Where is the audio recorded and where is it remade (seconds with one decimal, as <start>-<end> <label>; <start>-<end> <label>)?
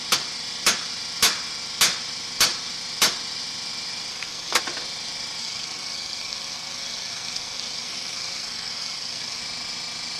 0.0-4.1 recorded; 4.1-4.6 remade; 4.6-5.4 recorded; 5.4-9.4 remade; 9.4-10.2 recorded